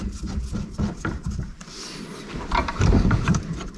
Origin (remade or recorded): remade